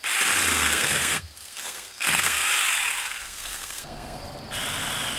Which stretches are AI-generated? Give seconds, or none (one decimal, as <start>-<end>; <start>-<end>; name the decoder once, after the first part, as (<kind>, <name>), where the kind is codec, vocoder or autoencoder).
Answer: 0.5-2.5 (codec, SNAC); 2.9-4.2